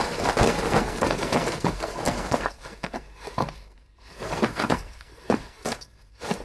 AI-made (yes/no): yes